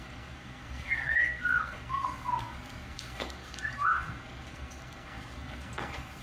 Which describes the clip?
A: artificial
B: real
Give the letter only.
A